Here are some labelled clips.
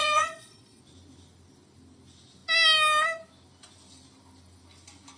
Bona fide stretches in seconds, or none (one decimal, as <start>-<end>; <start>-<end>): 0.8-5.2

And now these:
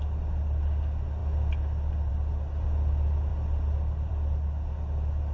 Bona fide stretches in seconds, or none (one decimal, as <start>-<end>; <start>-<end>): 0.0-5.3

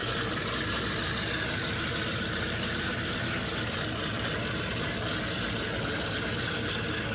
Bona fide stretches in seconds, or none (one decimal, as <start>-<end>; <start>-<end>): 0.0-7.1